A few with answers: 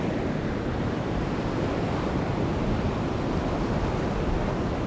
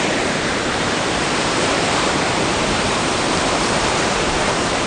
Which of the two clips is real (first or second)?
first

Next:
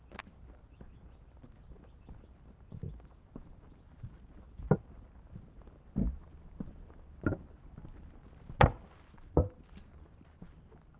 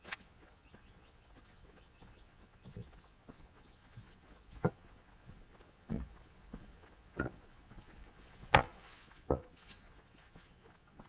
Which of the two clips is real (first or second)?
first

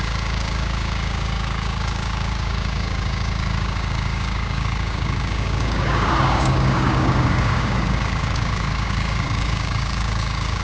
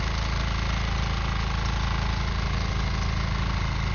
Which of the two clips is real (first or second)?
second